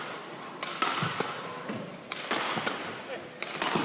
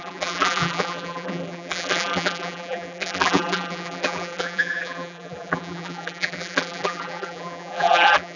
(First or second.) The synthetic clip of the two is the second